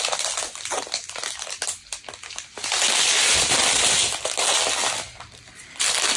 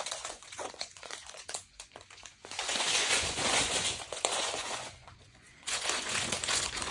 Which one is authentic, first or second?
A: first